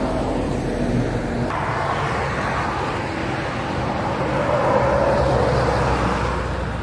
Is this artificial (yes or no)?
no